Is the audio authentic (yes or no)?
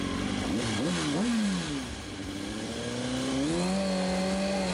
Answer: yes